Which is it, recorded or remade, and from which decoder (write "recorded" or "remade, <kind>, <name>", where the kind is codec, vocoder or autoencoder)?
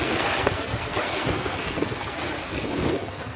remade, codec, SNAC